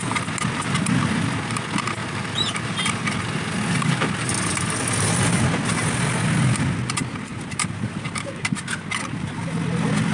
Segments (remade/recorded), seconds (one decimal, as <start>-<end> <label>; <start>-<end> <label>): 0.0-2.0 recorded; 2.0-3.2 remade; 3.2-7.3 recorded; 7.3-7.9 remade; 7.9-10.1 recorded